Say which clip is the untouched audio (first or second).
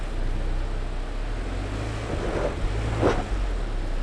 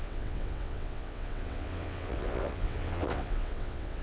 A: first